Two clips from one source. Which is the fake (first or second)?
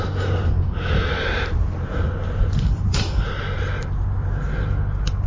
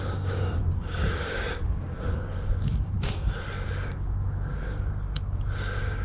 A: second